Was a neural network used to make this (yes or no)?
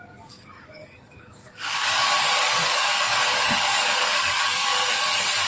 yes